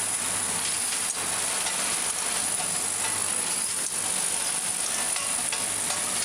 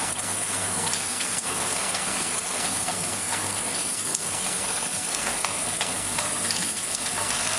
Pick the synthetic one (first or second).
second